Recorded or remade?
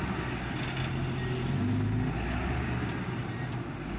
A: recorded